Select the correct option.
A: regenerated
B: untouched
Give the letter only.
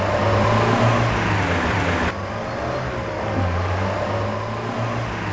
B